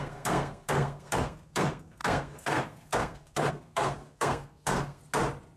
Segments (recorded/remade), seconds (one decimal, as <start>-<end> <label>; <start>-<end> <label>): 0.0-5.0 remade; 5.0-5.6 recorded